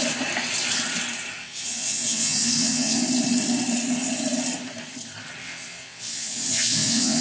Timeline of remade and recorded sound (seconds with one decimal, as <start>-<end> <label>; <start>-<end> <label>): 0.0-1.4 recorded; 1.4-3.0 remade; 3.0-5.4 recorded; 5.4-7.2 remade